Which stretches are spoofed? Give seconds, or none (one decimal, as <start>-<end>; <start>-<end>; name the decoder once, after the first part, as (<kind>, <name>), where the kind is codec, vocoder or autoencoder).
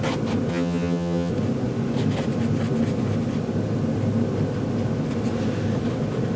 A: 0.5-1.3 (vocoder, HiFi-GAN)